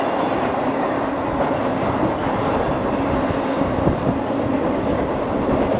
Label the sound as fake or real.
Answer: real